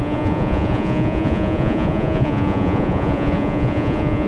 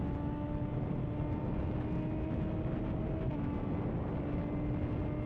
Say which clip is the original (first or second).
second